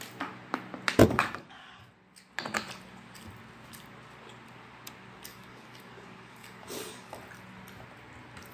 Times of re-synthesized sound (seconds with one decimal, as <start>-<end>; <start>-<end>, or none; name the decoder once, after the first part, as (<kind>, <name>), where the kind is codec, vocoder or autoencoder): 1.0-1.8 (codec, DAC); 5.3-7.2